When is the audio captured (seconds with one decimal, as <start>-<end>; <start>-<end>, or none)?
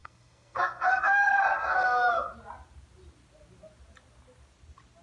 2.3-5.0